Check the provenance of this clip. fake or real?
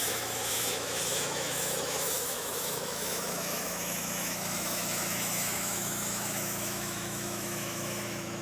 fake